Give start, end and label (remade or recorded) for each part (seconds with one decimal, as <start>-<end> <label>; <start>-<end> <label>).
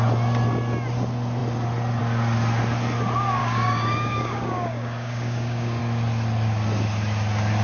0.0-3.4 recorded; 3.4-5.8 remade; 5.8-7.6 recorded